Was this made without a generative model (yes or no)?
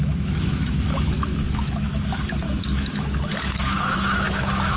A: no